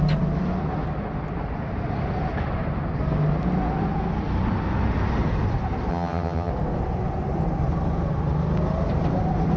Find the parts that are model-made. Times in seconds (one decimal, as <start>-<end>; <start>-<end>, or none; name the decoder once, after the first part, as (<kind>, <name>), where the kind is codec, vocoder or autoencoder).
5.9-6.5 (vocoder, HiFi-GAN)